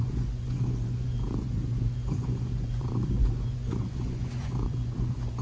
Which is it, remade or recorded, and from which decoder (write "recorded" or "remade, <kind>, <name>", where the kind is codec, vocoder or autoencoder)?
remade, vocoder, Vocos